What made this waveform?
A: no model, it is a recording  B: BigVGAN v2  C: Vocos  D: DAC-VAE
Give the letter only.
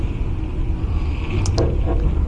A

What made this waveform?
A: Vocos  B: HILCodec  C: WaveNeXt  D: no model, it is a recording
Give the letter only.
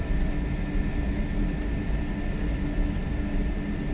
D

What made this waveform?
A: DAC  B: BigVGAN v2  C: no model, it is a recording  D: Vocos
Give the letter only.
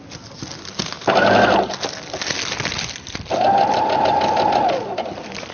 C